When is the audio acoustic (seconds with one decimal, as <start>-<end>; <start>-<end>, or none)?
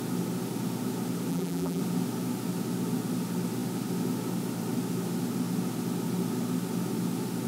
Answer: 0.0-1.3; 1.8-7.5